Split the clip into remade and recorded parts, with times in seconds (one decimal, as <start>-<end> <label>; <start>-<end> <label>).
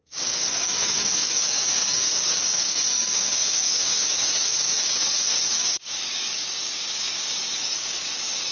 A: 0.0-8.5 remade